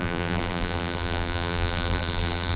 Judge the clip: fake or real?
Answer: fake